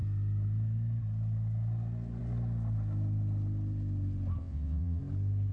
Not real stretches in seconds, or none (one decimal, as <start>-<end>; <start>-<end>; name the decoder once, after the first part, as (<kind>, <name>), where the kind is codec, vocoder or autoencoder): 4.4-5.0 (vocoder, WaveNeXt)